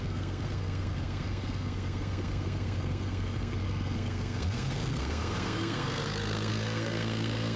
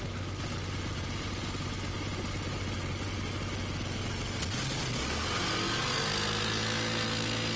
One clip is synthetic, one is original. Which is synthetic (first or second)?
first